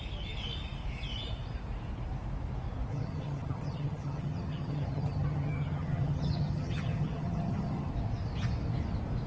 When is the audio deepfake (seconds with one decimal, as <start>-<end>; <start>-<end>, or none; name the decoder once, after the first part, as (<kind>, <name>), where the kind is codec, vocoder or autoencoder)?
2.9-7.9 (vocoder, HiFi-GAN)

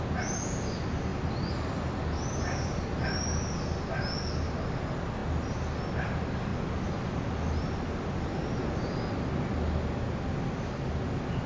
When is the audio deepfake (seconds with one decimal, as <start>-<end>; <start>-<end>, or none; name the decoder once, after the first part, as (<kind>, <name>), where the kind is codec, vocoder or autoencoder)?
6.5-8.1 (vocoder, BigVGAN v2)

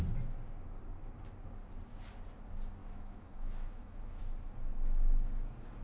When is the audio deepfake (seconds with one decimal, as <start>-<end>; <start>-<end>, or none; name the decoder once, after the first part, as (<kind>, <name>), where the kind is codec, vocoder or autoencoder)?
2.8-4.2 (autoencoder, DAC-VAE)

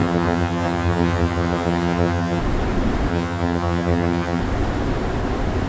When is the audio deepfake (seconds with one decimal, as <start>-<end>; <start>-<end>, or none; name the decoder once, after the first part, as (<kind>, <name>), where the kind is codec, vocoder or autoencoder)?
0.0-2.4 (vocoder, HiFi-GAN); 3.1-4.4

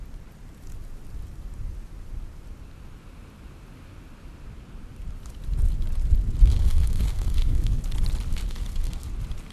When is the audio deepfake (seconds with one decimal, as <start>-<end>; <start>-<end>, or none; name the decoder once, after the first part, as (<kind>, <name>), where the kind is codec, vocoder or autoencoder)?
6.5-7.8 (codec, SNAC); 8.3-9.1

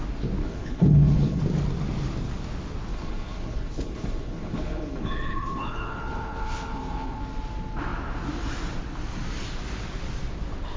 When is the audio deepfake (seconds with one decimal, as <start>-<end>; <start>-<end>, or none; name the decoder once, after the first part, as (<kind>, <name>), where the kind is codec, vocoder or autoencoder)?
0.4-1.4 (codec, HILCodec); 2.9-7.2

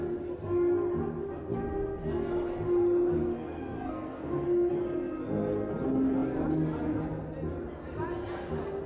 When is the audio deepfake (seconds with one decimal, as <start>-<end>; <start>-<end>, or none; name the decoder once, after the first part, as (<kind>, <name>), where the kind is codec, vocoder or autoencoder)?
3.2-4.7 (codec, SNAC)

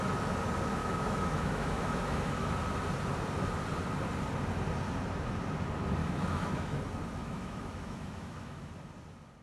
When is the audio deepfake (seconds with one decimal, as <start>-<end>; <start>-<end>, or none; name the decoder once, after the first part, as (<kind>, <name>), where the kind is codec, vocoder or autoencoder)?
0.8-2.5 (autoencoder, DAC-VAE); 6.0-6.8; 7.2-8.7